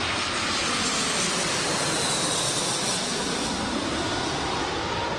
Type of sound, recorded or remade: recorded